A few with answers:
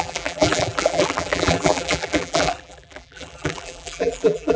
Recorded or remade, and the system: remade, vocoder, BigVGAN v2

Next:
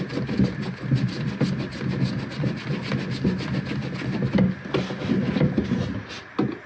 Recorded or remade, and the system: recorded